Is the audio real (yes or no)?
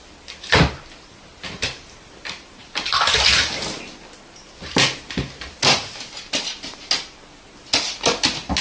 yes